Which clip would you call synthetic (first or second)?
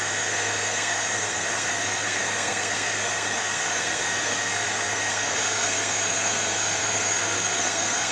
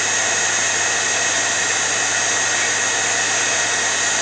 first